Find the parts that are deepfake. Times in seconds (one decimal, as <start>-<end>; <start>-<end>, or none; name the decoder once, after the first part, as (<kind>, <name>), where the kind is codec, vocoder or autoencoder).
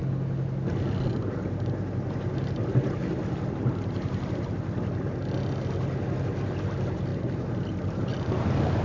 none